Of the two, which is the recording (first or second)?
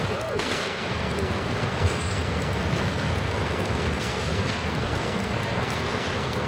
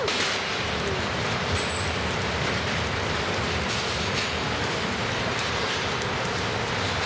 second